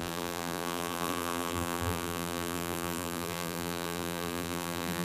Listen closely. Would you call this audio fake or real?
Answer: fake